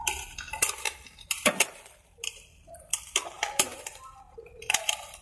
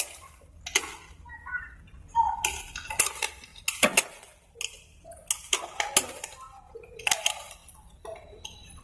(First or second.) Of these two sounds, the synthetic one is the first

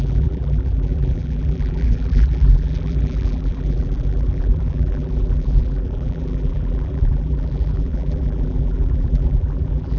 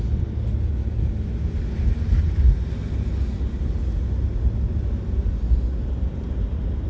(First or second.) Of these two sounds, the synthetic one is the first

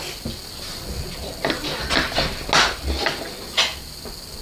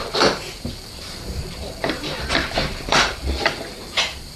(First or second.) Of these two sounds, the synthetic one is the second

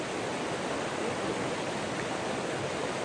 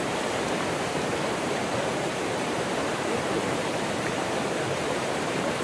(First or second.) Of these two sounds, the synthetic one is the second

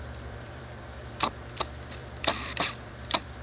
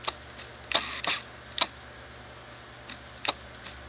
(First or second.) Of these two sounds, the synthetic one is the first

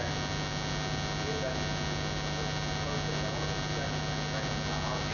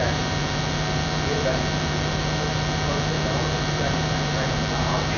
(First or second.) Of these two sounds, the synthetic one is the second